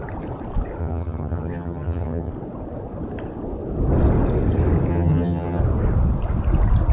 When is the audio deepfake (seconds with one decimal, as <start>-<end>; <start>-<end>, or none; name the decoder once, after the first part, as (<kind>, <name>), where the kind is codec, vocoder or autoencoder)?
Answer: 0.8-2.3 (vocoder, HiFi-GAN); 4.9-5.6